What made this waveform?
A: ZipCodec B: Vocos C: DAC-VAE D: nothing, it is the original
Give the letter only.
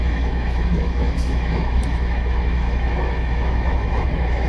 C